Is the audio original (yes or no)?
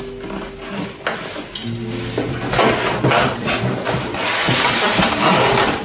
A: yes